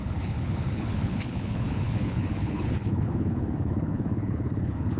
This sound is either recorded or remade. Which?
remade